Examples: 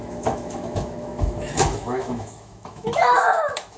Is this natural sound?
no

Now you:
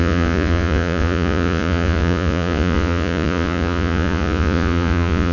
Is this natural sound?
no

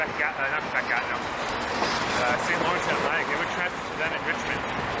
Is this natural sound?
yes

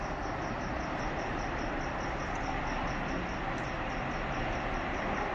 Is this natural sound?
yes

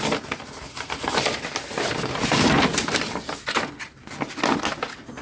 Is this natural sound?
yes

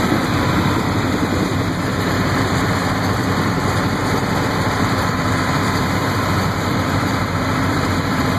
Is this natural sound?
no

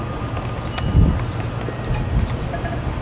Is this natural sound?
yes